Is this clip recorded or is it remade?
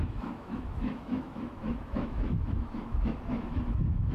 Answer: remade